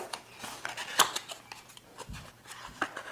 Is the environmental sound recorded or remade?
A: recorded